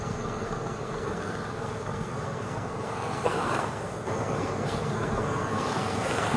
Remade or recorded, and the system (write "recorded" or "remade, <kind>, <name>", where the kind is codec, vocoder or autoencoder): remade, codec, SNAC